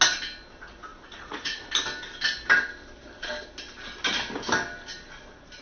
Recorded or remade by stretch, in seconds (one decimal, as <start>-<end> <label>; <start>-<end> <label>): 0.0-0.9 recorded; 0.9-1.7 remade; 1.7-5.6 recorded